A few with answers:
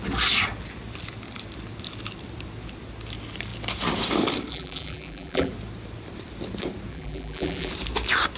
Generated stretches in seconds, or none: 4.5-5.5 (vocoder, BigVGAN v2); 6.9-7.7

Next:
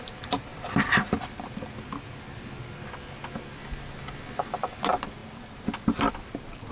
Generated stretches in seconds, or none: none

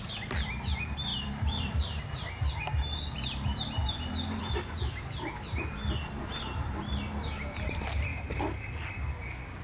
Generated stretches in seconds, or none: 1.1-2.0 (vocoder, BigVGAN v2); 3.8-4.4; 8.1-8.7

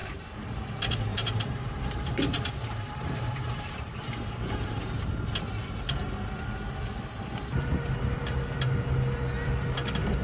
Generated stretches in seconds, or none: 0.0-0.7 (vocoder, BigVGAN v2); 1.1-5.0